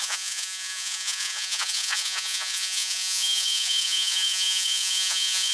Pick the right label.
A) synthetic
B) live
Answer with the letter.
A